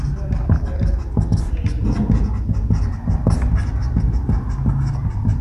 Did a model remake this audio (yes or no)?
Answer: no